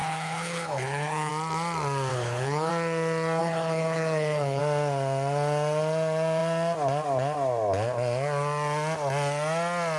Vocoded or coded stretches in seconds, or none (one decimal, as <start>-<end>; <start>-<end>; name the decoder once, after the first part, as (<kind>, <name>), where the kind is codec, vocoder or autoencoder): 0.0-1.3 (codec, HILCodec); 2.1-2.7; 3.4-4.6